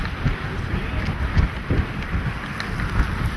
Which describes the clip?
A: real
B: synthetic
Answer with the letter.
A